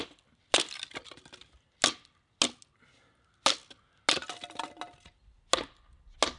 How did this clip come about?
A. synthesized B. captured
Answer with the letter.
B